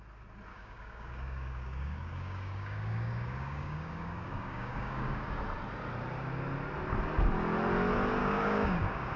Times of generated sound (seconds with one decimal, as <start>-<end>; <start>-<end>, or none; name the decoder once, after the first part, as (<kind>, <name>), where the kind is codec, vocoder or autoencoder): 0.5-5.4 (codec, DAC); 8.2-9.2